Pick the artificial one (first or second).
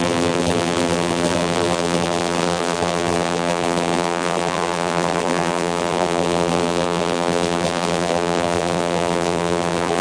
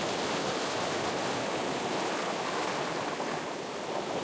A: first